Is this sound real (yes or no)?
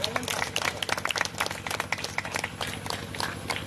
yes